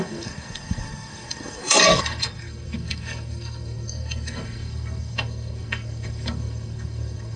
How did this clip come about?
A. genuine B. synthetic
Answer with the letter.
B